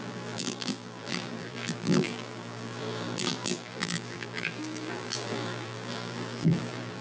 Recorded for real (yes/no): no